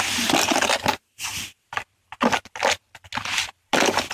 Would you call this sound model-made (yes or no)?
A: no